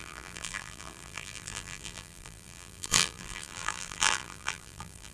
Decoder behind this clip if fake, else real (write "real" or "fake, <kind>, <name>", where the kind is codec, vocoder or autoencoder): fake, vocoder, BigVGAN v2